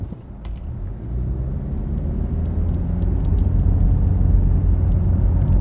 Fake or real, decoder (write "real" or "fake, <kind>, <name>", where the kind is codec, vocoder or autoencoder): real